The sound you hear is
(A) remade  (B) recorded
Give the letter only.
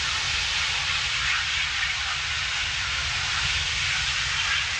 B